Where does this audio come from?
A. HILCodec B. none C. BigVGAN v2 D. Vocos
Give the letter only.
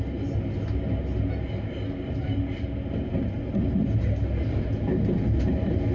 B